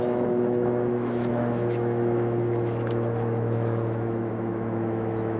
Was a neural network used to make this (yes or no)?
yes